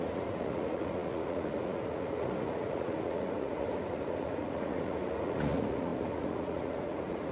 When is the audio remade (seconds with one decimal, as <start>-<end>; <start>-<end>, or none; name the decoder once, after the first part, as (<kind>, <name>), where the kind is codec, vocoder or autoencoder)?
0.0-7.3 (vocoder, Vocos)